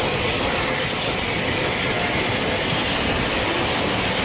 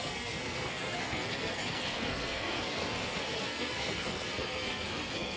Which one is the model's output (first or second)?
second